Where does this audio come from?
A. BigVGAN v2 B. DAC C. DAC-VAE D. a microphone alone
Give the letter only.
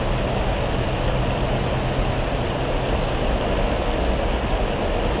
D